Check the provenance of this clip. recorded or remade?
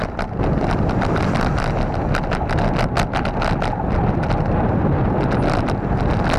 recorded